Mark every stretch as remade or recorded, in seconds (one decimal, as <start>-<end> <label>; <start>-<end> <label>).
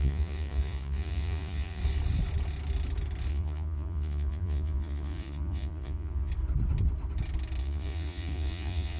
0.0-1.8 remade; 1.8-3.3 recorded; 3.3-6.3 remade; 6.3-7.6 recorded; 7.6-9.0 remade